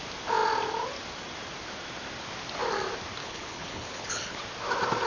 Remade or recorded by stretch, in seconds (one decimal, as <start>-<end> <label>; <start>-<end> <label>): 0.0-3.2 recorded; 3.2-4.4 remade; 4.4-5.1 recorded